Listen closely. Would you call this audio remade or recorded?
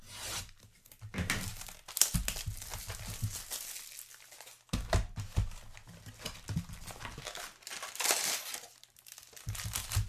recorded